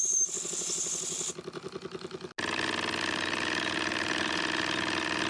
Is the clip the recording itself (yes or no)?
yes